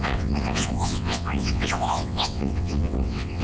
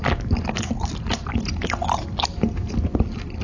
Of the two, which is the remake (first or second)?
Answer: first